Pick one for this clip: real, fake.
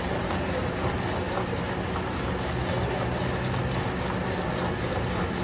real